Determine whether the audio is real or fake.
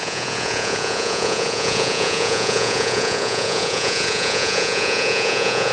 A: fake